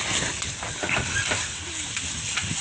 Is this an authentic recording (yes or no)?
yes